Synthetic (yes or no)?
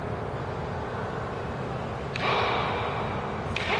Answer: no